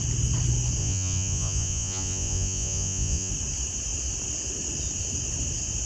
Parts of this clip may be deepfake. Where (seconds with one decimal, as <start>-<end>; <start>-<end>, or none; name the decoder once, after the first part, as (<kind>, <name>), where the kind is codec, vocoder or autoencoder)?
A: 0.8-3.3 (vocoder, Vocos)